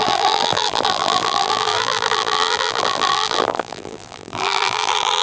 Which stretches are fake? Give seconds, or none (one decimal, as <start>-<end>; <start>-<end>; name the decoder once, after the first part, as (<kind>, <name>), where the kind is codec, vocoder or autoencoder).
0.0-5.2 (vocoder, BigVGAN v2)